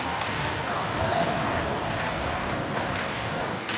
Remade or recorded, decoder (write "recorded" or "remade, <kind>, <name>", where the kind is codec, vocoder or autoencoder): remade, codec, DAC